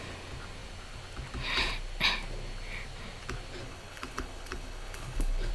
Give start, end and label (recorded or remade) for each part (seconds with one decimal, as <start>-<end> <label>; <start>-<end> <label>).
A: 0.0-3.6 recorded; 3.6-5.5 remade